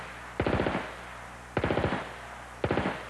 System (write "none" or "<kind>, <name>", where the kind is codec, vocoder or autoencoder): none